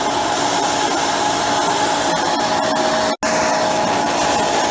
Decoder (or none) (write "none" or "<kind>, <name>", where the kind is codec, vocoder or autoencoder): none